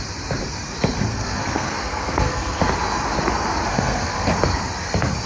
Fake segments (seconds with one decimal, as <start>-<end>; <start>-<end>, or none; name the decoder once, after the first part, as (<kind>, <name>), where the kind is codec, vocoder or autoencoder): 1.1-2.6 (codec, SNAC); 3.7-4.3